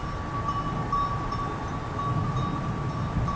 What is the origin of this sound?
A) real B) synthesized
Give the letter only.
A